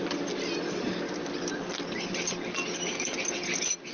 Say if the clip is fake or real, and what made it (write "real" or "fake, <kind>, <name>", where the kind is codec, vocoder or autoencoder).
real